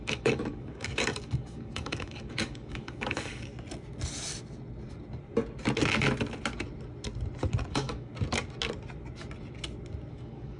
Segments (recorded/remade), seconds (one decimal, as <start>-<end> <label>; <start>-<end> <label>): 0.0-3.5 remade; 3.5-7.7 recorded; 7.7-8.1 remade; 8.1-10.1 recorded; 10.1-10.6 remade